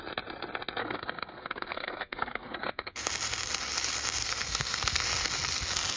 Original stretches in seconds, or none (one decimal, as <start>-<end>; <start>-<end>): 0.0-0.8; 3.1-4.2; 5.0-6.0